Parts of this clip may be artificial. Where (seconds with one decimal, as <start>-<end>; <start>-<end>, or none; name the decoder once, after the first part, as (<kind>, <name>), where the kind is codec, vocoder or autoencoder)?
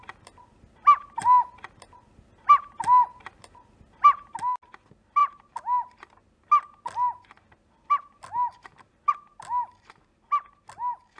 none